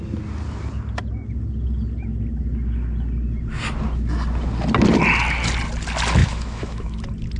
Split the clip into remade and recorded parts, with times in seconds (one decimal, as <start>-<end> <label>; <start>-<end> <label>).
0.0-6.2 recorded; 6.2-7.0 remade; 7.0-7.4 recorded